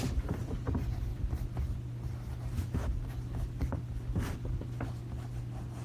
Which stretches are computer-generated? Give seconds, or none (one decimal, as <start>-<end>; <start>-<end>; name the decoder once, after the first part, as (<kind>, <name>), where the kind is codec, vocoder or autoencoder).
none